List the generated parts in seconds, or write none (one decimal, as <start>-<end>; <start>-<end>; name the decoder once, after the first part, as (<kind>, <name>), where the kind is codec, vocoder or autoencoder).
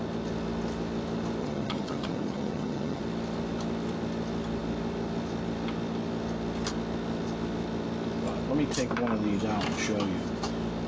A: 1.4-3.0 (vocoder, HiFi-GAN)